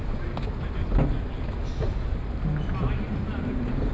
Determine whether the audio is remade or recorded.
recorded